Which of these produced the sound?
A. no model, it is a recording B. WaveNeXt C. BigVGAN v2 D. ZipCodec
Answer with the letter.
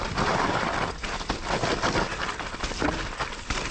A